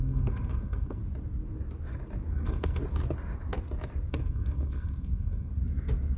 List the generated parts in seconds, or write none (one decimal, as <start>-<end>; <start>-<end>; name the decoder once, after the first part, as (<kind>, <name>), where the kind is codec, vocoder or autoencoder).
0.0-1.0 (codec, SNAC); 2.3-2.8; 4.1-5.5